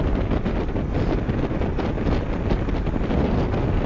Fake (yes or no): no